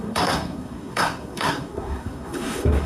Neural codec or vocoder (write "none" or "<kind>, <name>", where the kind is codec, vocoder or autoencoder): codec, SNAC